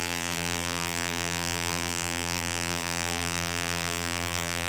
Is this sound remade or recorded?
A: remade